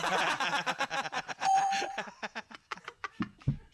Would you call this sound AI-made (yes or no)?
yes